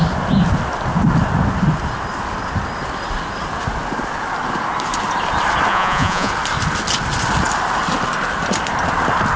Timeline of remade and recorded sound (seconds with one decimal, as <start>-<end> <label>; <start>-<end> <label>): 0.0-5.7 recorded; 5.7-6.3 remade; 6.3-9.4 recorded